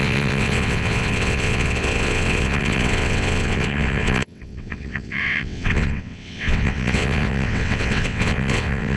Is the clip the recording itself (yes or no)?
no